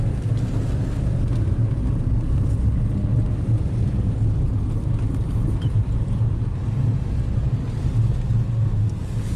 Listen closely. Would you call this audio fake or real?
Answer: real